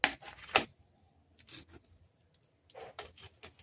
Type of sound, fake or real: real